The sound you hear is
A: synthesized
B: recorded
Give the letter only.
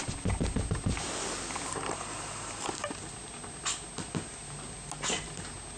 B